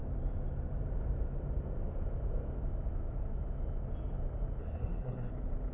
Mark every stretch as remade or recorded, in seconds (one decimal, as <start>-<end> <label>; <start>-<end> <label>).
0.0-4.6 recorded; 4.6-5.3 remade; 5.3-5.7 recorded